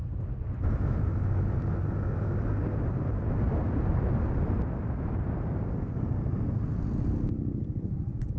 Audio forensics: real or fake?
real